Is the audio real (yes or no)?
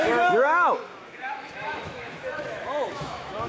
no